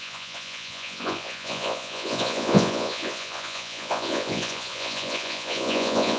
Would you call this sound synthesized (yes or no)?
yes